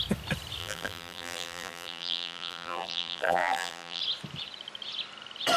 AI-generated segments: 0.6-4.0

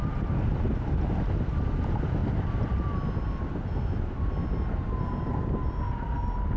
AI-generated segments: none

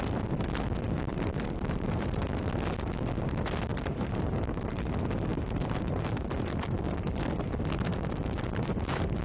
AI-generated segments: 1.1-2.2; 3.7-4.8; 5.3-6.8; 7.9-9.2

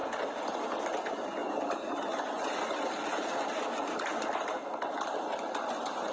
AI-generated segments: 0.0-0.8; 1.4-2.6